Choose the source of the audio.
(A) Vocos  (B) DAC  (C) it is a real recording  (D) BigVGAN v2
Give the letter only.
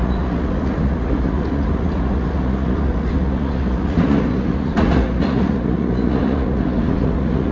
A